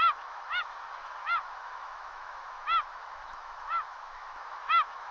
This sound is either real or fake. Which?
fake